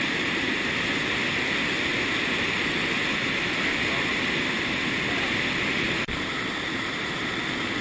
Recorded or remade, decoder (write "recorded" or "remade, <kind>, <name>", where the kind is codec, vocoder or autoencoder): recorded